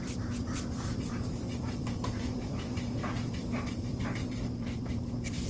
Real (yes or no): no